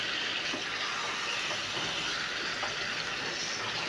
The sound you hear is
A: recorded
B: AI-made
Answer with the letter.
A